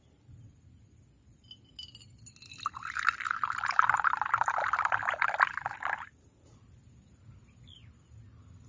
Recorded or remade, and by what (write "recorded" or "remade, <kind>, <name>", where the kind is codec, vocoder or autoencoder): recorded